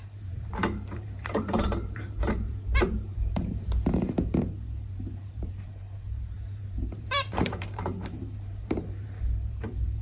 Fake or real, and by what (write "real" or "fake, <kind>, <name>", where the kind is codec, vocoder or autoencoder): fake, vocoder, BigVGAN v2